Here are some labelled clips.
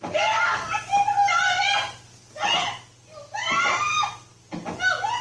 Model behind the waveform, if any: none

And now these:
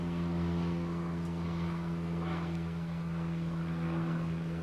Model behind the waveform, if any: codec, SNAC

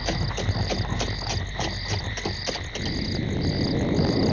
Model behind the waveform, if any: none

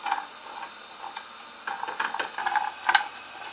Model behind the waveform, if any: none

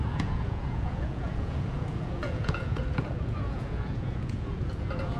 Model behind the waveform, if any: vocoder, Vocos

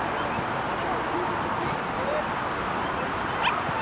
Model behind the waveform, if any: none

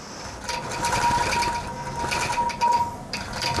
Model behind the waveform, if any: none